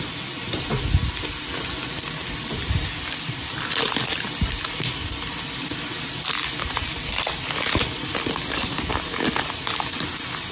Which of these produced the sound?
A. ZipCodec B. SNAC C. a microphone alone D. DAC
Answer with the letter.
C